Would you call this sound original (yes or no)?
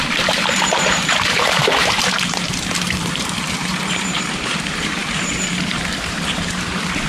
no